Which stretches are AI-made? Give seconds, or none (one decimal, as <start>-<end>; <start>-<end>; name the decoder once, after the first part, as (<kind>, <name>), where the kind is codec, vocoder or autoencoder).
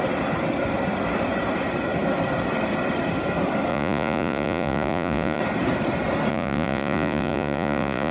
3.7-5.4 (vocoder, Vocos); 6.3-8.1